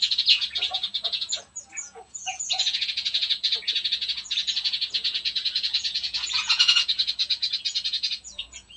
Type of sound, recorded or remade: remade